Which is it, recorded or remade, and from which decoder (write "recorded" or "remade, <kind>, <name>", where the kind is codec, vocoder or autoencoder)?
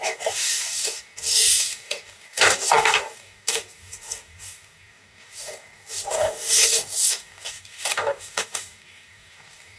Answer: remade, codec, DAC